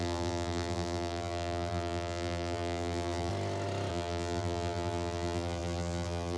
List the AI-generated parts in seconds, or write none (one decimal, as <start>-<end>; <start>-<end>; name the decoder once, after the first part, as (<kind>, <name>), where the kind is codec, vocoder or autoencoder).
0.0-3.3 (vocoder, BigVGAN v2); 3.9-6.4